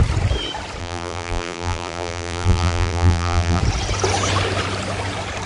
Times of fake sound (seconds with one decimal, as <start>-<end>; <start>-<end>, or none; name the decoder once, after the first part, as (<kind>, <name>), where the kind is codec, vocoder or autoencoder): 0.8-3.6 (vocoder, BigVGAN v2)